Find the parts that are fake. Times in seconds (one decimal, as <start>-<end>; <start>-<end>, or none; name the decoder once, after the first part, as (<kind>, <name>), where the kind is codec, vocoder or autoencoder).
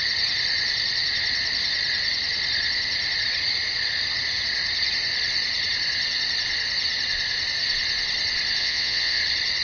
8.6-9.2 (vocoder, WaveNeXt)